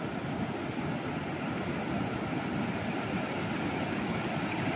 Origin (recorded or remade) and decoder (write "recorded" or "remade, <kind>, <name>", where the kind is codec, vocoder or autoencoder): recorded